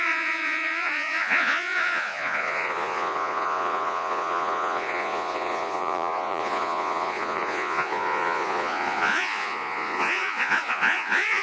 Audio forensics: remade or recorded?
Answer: remade